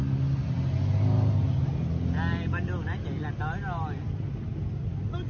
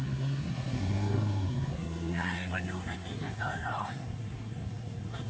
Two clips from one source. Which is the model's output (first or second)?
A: second